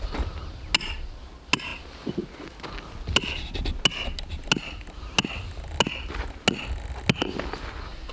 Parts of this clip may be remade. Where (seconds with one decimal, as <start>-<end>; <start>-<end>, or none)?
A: none